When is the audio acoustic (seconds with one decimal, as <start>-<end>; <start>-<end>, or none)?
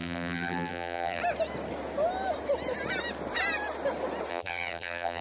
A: 1.2-4.3